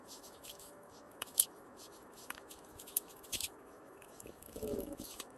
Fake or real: fake